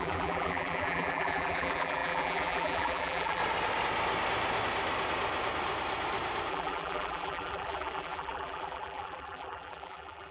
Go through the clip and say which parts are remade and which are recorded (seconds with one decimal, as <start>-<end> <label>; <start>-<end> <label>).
0.0-3.4 remade; 3.4-6.5 recorded; 6.5-10.3 remade

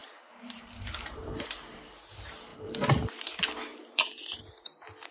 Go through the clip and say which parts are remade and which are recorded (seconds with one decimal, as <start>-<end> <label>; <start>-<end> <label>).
0.0-1.8 remade; 1.8-2.5 recorded; 2.5-3.1 remade; 3.1-3.7 recorded; 3.7-4.6 remade; 4.6-5.1 recorded

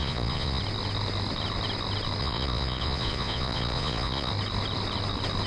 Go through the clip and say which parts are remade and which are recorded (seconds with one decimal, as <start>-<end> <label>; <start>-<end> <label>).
0.0-0.6 remade; 0.6-2.2 recorded; 2.2-4.3 remade; 4.3-5.5 recorded